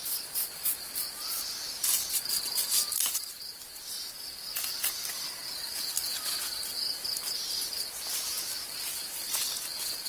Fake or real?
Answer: real